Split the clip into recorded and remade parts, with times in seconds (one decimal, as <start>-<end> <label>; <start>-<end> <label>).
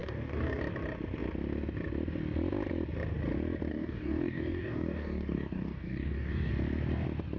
0.0-0.6 remade; 0.6-3.7 recorded; 3.7-6.5 remade; 6.5-7.4 recorded